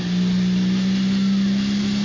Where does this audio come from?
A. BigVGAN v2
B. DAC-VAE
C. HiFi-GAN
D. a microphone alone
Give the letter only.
D